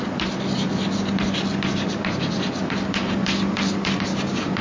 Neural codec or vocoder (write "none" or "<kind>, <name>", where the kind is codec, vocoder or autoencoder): none